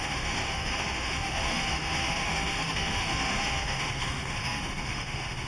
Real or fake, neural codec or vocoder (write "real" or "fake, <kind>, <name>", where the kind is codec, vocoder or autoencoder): fake, autoencoder, DAC-VAE